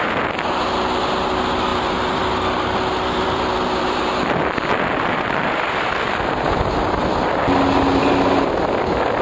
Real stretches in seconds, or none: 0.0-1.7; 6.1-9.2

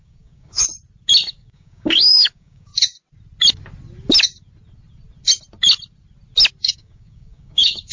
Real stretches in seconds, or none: 0.7-1.3; 2.7-6.7

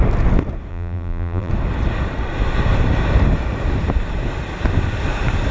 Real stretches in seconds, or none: 0.0-0.7; 1.5-5.5

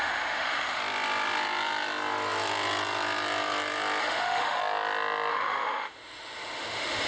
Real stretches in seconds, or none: 0.8-4.0; 4.6-5.3

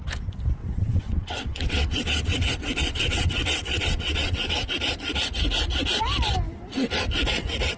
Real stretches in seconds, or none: 0.0-0.6; 4.7-7.8

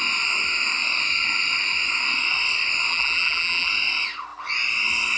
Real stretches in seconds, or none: 0.0-2.9; 3.7-5.2

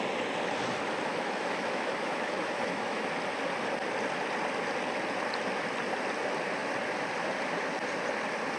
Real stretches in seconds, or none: 0.0-1.1; 3.1-8.6

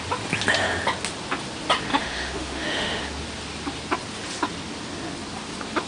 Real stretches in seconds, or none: 0.0-1.9; 3.0-5.9